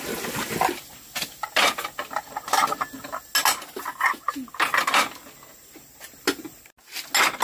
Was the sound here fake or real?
real